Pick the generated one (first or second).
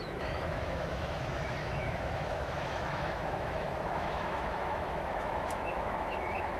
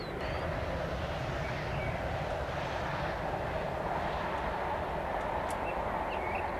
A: first